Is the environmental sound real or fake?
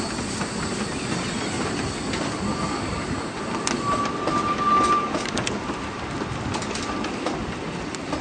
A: real